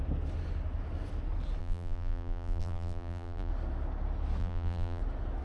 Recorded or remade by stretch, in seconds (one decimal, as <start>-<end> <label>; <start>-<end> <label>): 0.0-1.6 recorded; 1.6-3.5 remade; 3.5-4.4 recorded; 4.4-5.0 remade; 5.0-5.4 recorded